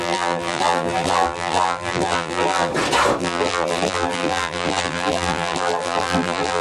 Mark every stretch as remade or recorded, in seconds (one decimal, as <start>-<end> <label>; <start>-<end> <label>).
0.0-2.7 remade; 2.7-3.2 recorded; 3.2-6.6 remade